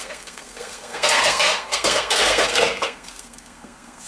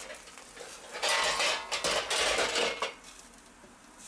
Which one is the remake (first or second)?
first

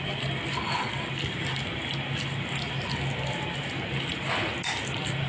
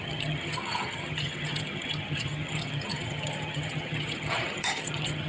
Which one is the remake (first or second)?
second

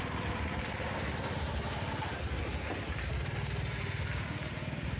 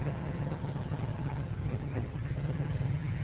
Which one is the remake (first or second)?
second